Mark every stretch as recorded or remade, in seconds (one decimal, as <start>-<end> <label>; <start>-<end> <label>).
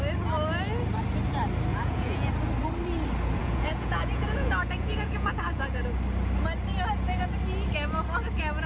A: 0.0-1.7 recorded; 1.7-2.3 remade; 2.3-3.4 recorded; 3.4-5.8 remade; 5.8-8.7 recorded